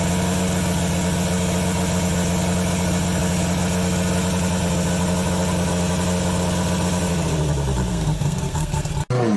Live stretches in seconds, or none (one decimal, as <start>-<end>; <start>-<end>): 0.0-7.9; 8.9-9.4

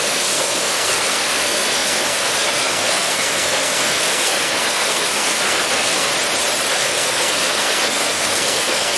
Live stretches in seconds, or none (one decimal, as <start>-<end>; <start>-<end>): 6.1-6.7

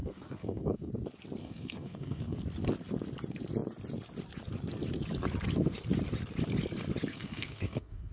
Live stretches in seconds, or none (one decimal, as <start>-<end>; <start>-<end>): 0.9-1.4; 2.4-7.1

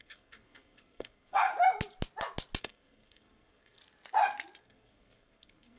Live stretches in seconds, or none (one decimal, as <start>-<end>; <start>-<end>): 1.5-2.6; 3.8-4.6

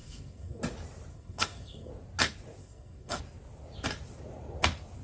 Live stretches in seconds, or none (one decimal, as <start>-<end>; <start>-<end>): 0.6-1.1; 1.9-2.6; 3.2-5.0

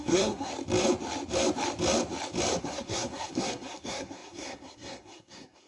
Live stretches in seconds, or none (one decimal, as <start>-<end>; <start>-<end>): 0.5-2.6

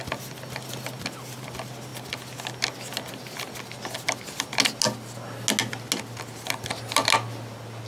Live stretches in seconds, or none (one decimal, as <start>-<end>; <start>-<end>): 0.0-7.9

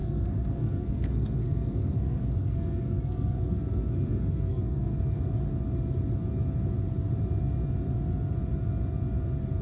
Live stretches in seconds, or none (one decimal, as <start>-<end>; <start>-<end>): 5.2-9.6